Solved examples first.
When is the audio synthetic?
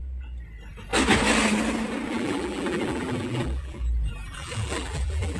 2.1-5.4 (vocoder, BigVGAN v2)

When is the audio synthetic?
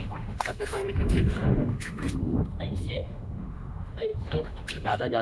0.0-5.2 (autoencoder, DAC-VAE)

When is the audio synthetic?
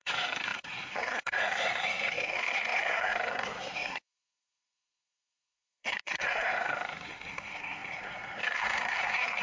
0.0-9.4 (codec, SNAC)